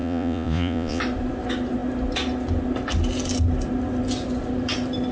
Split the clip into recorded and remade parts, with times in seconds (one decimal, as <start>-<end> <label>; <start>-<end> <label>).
0.0-1.0 remade; 1.0-5.1 recorded